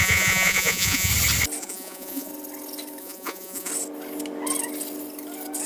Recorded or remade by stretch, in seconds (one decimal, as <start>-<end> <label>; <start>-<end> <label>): 0.0-1.1 remade; 1.1-1.6 recorded; 1.6-2.3 remade; 2.3-3.0 recorded; 3.0-3.7 remade; 3.7-5.7 recorded